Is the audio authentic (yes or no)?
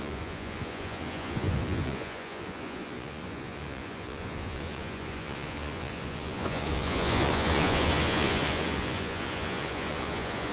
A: no